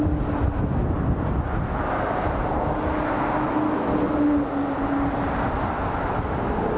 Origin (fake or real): real